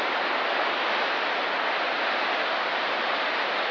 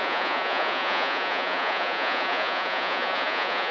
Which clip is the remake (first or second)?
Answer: second